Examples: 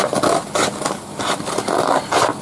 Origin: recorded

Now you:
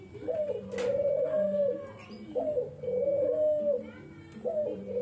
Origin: recorded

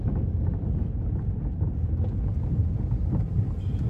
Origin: recorded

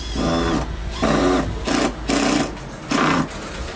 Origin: recorded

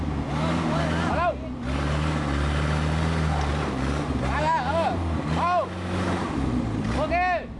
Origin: recorded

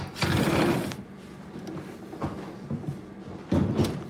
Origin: recorded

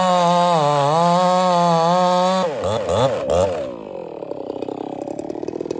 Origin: recorded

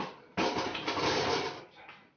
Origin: recorded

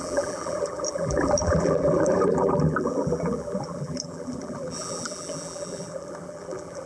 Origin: remade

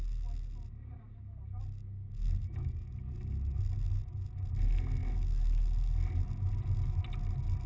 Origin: recorded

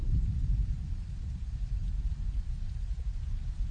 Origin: remade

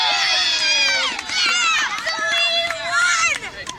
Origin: remade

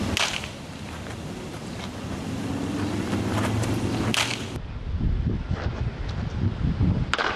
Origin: recorded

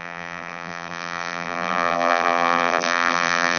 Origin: remade